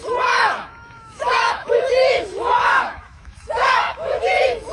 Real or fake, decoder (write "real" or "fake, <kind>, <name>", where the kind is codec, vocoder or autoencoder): fake, autoencoder, DAC-VAE